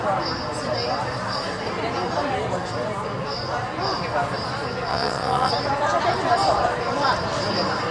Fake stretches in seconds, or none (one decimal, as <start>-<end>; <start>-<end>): 4.9-5.5